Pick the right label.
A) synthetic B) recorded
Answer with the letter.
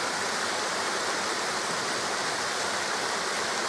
B